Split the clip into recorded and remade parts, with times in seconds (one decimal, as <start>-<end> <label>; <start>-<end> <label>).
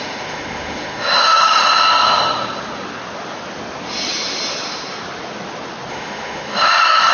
0.0-1.6 remade; 1.6-5.9 recorded; 5.9-7.1 remade